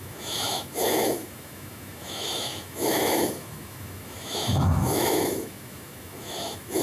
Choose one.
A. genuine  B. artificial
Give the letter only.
B